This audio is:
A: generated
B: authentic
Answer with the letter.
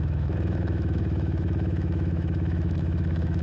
A